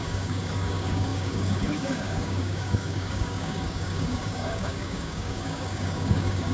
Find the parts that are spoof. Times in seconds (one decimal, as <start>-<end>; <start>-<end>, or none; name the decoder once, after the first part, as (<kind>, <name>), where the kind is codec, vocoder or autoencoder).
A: 0.0-6.5 (codec, DAC)